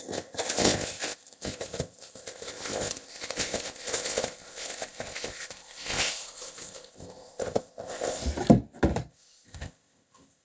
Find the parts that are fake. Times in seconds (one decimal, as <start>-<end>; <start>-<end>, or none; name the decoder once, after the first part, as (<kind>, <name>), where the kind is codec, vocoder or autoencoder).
0.0-8.2 (codec, ZipCodec); 9.1-10.4